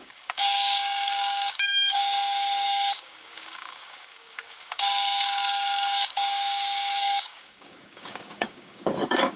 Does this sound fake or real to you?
fake